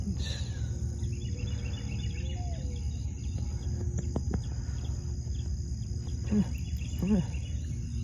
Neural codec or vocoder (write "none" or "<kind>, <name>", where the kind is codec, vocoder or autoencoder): none